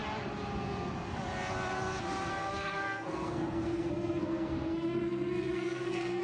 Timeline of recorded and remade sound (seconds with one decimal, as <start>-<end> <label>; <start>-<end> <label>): 0.0-2.3 recorded; 2.3-6.2 remade